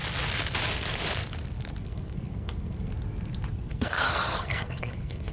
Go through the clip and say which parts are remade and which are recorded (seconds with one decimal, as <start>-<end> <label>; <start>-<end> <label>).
0.0-1.8 recorded; 1.8-2.9 remade; 2.9-3.5 recorded; 3.5-5.3 remade